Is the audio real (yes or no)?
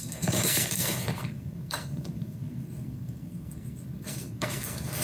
no